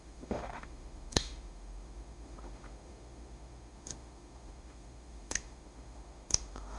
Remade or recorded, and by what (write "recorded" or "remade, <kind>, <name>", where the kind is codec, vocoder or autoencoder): remade, autoencoder, DAC-VAE